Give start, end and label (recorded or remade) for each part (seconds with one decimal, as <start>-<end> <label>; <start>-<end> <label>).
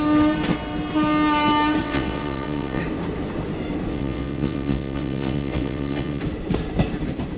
0.0-1.8 recorded; 1.8-2.8 remade; 2.8-3.9 recorded; 3.9-6.2 remade; 6.2-7.4 recorded